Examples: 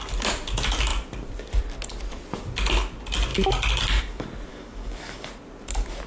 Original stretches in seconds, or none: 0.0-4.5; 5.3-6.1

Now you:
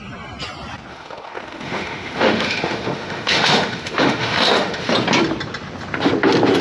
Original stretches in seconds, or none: 0.0-0.9; 4.9-6.6

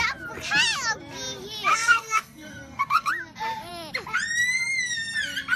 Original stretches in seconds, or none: 0.0-1.7; 3.1-5.6